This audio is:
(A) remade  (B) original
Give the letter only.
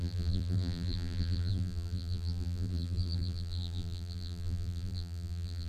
A